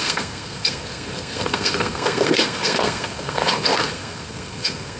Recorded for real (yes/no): no